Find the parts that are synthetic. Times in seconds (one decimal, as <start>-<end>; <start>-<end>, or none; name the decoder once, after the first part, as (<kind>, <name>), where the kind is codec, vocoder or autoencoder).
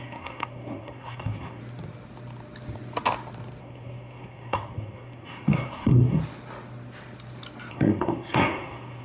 0.0-1.6 (codec, SNAC); 3.6-6.2; 7.7-9.0